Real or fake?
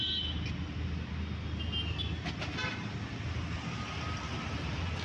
real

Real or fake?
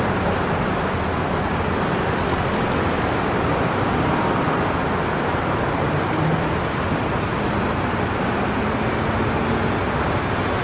real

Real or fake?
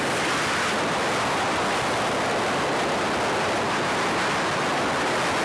real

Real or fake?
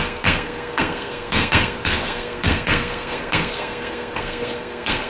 fake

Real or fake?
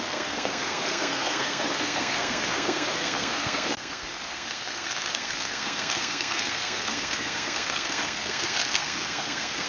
fake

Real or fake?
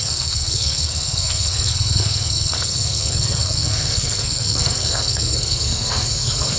fake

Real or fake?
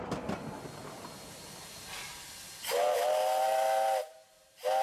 real